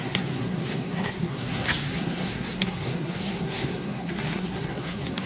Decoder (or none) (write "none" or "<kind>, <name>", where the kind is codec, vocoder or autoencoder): codec, SNAC